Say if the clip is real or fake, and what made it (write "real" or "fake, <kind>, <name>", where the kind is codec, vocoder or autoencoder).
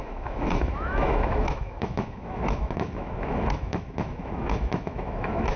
fake, autoencoder, DAC-VAE